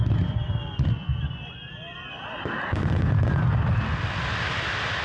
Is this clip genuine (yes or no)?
no